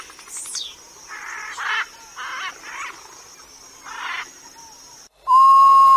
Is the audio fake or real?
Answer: real